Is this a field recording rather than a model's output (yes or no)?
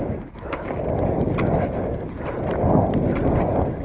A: yes